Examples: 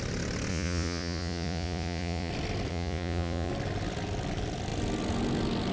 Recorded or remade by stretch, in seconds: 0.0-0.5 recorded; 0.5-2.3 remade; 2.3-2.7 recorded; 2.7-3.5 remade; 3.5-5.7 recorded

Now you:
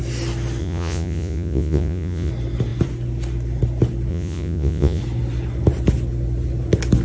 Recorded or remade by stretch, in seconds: 0.0-0.6 recorded; 0.6-2.3 remade; 2.3-4.1 recorded; 4.1-5.0 remade; 5.0-7.0 recorded

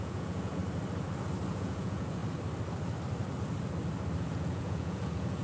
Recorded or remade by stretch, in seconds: 0.0-0.6 remade; 0.6-1.5 recorded; 1.5-2.2 remade; 2.2-4.2 recorded; 4.2-5.4 remade

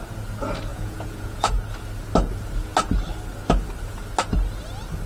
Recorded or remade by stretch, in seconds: 0.0-0.7 recorded; 0.7-1.5 remade; 1.5-5.1 recorded